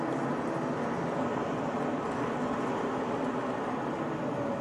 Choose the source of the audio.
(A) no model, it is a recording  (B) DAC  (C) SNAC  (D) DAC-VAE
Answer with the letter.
A